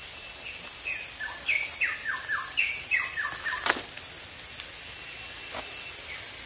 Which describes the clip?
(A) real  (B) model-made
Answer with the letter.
A